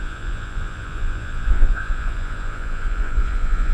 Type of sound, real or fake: fake